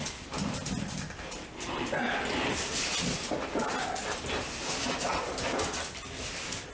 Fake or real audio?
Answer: real